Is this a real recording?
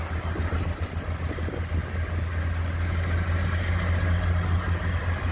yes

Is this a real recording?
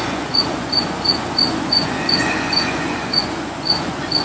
no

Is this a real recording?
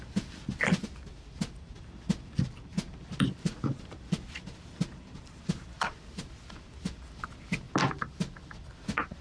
yes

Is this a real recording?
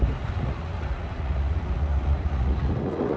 no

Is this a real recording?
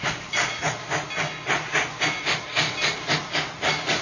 yes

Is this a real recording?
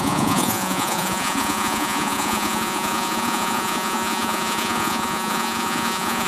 no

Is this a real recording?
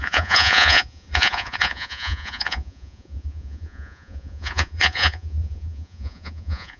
no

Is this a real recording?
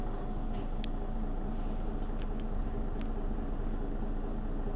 yes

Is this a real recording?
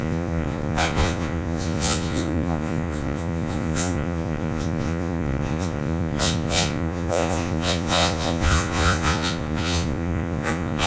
no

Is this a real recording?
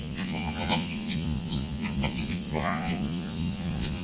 no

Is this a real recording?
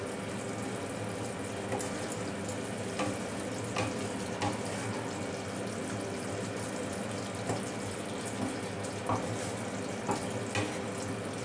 yes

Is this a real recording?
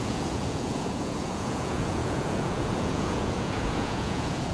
no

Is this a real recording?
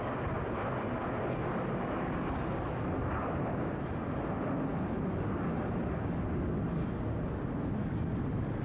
yes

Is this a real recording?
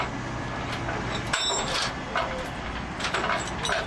yes